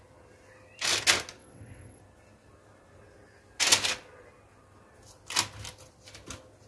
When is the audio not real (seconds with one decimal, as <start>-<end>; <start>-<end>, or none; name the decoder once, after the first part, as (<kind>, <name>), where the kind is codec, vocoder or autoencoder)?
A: 1.4-2.0 (vocoder, WaveNeXt)